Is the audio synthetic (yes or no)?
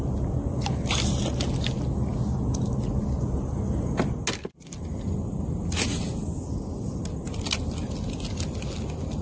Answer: no